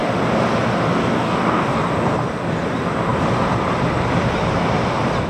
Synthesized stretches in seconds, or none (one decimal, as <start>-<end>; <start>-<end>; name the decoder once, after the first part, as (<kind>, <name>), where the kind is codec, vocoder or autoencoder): 1.0-1.8 (codec, DAC)